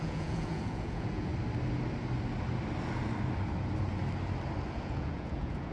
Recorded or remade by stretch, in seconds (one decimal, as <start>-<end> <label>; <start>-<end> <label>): 0.0-1.3 remade; 1.3-4.7 recorded; 4.7-5.7 remade